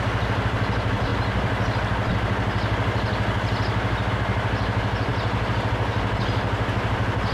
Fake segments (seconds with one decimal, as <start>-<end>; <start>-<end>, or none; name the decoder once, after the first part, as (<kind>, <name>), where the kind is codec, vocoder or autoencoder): none